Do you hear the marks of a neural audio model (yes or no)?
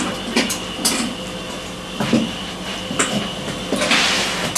no